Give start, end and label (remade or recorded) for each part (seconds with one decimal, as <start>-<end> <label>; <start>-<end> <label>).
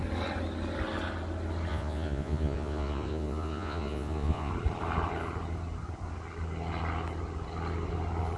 0.0-1.7 recorded; 1.7-4.5 remade; 4.5-8.4 recorded